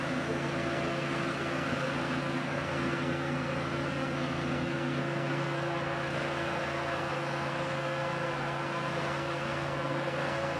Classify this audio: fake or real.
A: fake